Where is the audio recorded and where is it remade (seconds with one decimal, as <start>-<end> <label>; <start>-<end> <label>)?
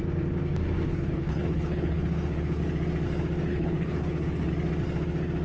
0.0-0.9 recorded; 0.9-2.6 remade; 2.6-3.5 recorded; 3.5-4.5 remade; 4.5-5.4 recorded